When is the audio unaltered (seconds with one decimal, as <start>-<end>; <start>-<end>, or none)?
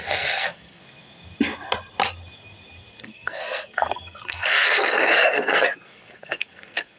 0.8-3.0